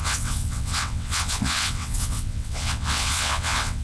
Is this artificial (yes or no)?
yes